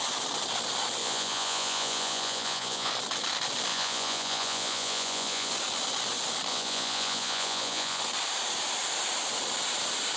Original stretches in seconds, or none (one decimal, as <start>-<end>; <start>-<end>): 0.0-1.0; 2.9-3.7; 5.5-6.5; 8.0-10.2